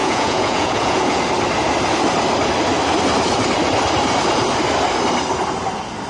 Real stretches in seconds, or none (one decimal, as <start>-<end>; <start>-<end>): 1.2-6.1